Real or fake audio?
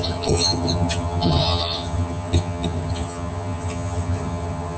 fake